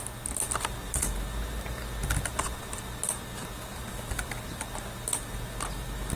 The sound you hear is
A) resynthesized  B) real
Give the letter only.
B